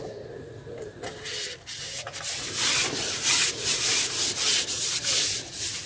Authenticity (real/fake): real